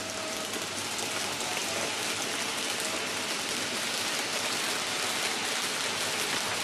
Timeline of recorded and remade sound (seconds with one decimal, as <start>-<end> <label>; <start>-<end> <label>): 0.0-6.6 recorded